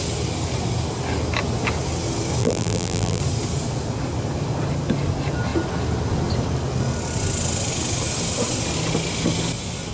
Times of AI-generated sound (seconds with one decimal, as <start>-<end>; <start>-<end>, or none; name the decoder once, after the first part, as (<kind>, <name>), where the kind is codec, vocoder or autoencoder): 2.4-3.2 (vocoder, BigVGAN v2)